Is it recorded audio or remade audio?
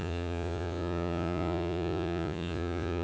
remade